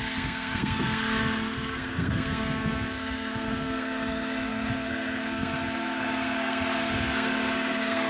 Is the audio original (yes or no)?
no